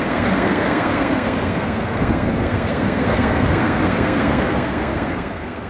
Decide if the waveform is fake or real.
fake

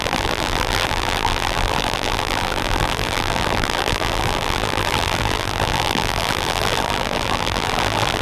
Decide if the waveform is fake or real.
fake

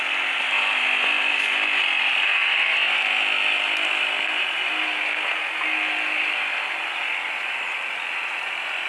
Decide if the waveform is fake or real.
real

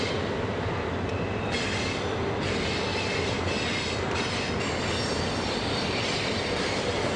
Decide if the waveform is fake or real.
real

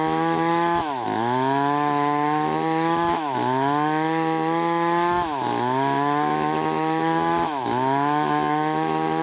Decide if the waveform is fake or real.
fake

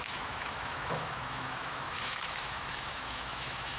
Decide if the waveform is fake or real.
fake